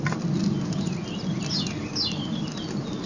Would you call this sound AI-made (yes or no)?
no